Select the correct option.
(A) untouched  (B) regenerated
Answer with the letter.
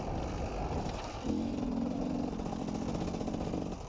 A